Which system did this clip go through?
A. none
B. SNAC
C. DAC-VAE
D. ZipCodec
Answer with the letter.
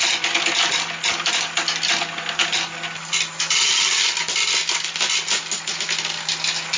A